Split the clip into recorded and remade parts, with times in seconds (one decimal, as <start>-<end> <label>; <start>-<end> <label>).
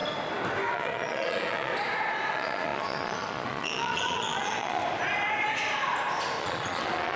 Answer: 0.0-0.7 recorded; 0.7-1.7 remade; 1.7-2.3 recorded; 2.3-4.8 remade; 4.8-6.4 recorded; 6.4-7.2 remade